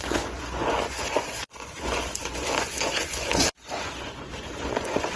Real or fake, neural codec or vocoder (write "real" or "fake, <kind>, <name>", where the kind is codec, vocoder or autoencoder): fake, vocoder, Vocos